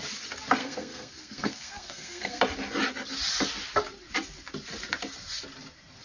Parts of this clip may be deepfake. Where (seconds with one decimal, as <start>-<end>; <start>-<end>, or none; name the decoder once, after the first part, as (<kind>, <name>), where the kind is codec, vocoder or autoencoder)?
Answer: 0.6-2.4 (codec, SNAC)